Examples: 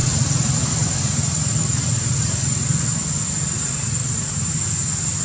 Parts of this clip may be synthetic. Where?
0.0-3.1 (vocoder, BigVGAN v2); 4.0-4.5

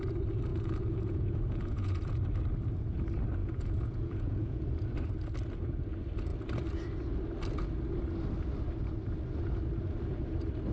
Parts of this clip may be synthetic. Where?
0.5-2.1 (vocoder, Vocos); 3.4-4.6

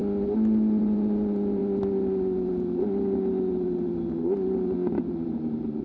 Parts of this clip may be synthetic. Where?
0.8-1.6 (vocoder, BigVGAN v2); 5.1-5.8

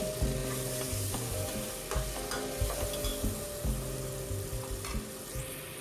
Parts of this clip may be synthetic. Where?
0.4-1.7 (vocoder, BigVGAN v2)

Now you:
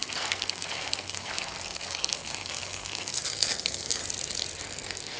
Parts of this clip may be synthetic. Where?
0.0-4.0 (codec, SNAC); 4.6-5.2